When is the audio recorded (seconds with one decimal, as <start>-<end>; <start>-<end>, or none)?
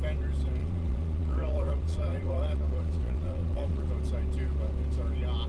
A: 0.0-0.6; 3.9-5.5